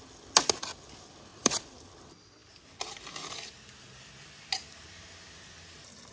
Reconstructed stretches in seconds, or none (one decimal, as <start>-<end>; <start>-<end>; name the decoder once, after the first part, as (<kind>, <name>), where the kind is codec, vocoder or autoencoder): 1.3-1.9 (vocoder, BigVGAN v2)